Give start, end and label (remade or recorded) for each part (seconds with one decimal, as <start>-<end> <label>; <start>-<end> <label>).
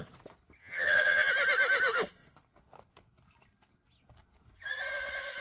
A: 0.0-0.6 recorded; 0.6-1.3 remade; 1.3-5.4 recorded